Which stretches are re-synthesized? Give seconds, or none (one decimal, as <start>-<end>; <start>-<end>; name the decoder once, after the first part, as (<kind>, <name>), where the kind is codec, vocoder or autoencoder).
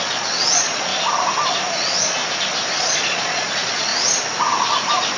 0.0-0.9 (vocoder, Vocos); 1.8-2.2; 2.8-3.9